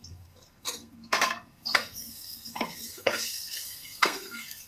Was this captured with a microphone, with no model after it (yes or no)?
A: no